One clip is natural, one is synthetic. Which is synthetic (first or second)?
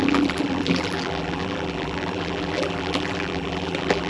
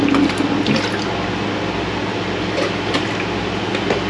first